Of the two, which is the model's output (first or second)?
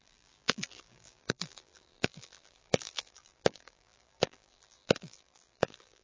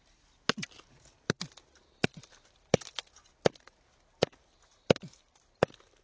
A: first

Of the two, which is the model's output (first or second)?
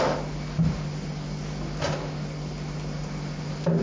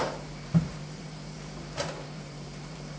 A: second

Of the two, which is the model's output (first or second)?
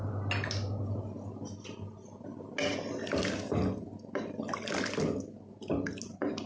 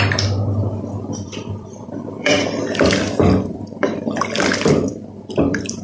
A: second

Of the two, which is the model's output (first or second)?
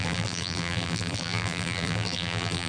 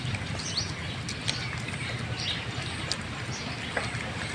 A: first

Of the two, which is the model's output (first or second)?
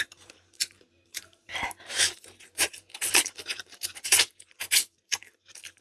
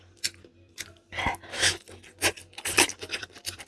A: first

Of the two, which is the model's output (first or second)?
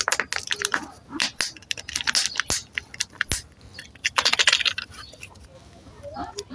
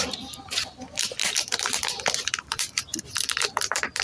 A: second